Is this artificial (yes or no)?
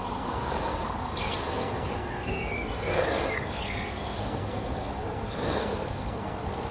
yes